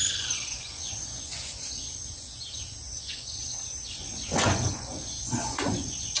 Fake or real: fake